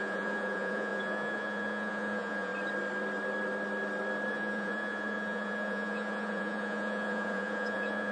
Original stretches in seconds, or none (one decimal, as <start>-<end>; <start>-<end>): 2.5-4.3